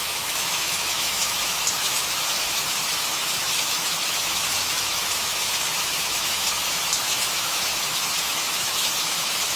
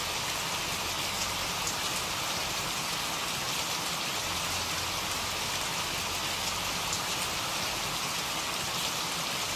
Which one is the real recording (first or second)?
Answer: second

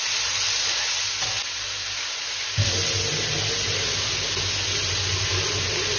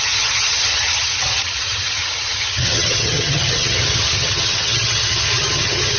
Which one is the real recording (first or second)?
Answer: first